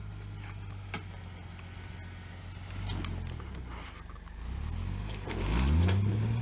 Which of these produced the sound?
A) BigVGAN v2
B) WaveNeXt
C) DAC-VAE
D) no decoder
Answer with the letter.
D